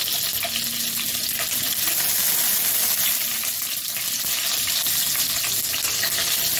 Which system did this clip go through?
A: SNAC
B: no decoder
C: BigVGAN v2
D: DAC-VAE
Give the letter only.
B